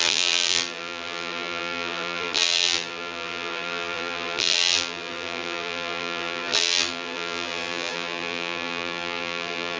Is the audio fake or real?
fake